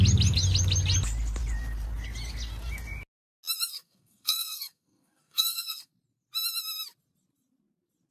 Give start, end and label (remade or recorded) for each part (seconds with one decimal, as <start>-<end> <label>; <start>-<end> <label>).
0.0-3.7 recorded; 3.7-5.9 remade; 5.9-8.1 recorded